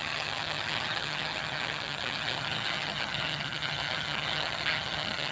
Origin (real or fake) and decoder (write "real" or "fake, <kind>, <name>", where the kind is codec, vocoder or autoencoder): fake, vocoder, HiFi-GAN